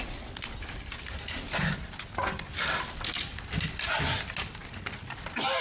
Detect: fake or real real